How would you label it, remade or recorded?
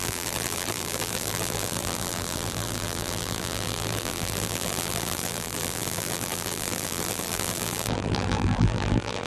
remade